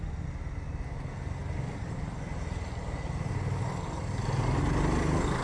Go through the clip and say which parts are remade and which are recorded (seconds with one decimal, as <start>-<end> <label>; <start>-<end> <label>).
0.0-5.4 recorded